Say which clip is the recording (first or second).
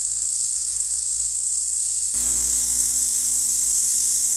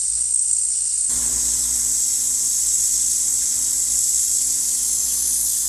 second